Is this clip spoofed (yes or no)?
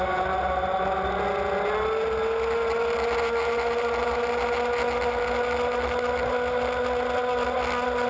no